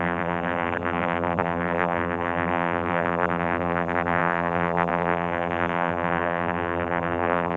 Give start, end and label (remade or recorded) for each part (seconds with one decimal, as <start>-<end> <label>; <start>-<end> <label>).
0.0-7.6 remade